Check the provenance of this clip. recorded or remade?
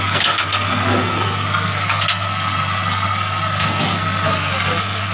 remade